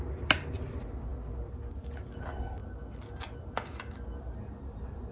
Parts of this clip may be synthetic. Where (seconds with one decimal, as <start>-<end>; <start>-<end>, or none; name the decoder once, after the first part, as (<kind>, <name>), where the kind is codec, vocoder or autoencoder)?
none